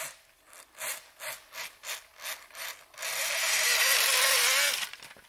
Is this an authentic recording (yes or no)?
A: yes